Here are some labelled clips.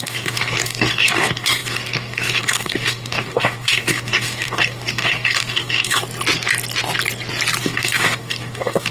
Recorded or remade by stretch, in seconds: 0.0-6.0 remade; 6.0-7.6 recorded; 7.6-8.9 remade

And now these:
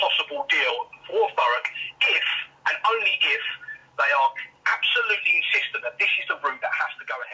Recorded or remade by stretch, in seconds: 0.0-1.1 recorded; 1.1-1.9 remade; 1.9-7.3 recorded